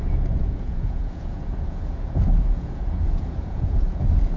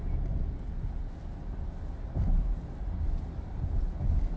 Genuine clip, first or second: second